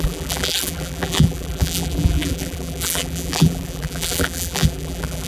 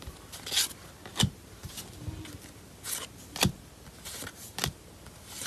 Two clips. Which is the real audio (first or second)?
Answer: second